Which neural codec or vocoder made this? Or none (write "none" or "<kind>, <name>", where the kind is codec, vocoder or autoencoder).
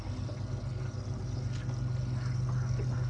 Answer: none